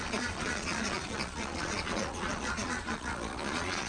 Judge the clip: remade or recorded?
remade